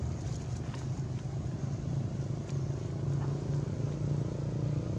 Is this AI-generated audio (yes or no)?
no